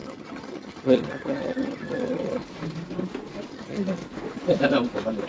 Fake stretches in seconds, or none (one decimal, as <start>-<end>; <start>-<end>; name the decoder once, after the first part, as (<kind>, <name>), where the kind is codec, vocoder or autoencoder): 0.0-2.4 (vocoder, HiFi-GAN); 3.5-4.0